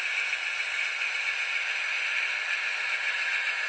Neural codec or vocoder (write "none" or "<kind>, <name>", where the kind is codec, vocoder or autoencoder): none